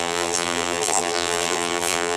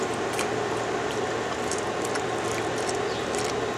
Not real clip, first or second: first